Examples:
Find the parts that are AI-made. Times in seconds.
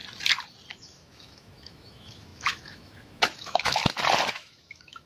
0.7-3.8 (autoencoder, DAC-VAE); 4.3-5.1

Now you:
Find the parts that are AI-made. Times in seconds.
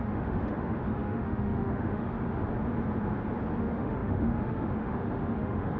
0.0-2.4 (autoencoder, DAC-VAE); 3.6-5.8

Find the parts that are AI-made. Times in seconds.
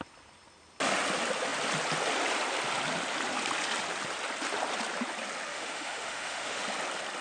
5.5-6.6 (autoencoder, DAC-VAE)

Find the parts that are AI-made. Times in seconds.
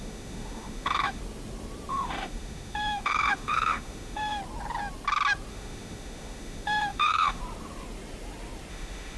0.0-1.2 (autoencoder, DAC-VAE); 1.9-4.4; 5.5-7.4; 8.7-9.2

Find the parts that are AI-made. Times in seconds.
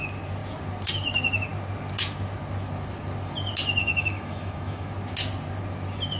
3.8-4.9 (autoencoder, DAC-VAE)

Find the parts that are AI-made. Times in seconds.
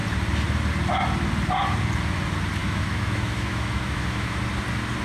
2.6-4.4 (autoencoder, DAC-VAE)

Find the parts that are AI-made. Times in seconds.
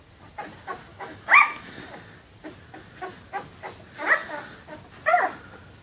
0.9-1.8 (autoencoder, DAC-VAE)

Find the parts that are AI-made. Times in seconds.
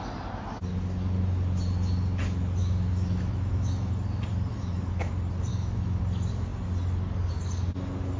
2.6-3.9 (autoencoder, DAC-VAE); 4.5-5.1; 5.5-6.0